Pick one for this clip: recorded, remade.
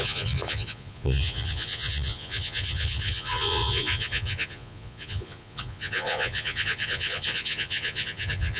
remade